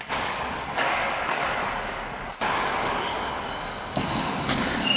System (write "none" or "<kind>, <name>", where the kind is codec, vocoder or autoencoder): codec, DAC